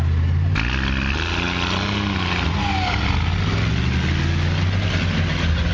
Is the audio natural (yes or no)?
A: yes